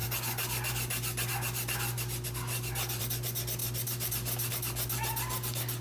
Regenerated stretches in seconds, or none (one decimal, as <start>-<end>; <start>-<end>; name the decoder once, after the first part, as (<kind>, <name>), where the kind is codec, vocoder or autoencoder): none